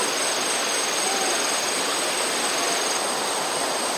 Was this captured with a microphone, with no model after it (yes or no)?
yes